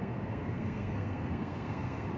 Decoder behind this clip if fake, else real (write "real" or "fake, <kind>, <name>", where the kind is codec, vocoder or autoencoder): fake, codec, SNAC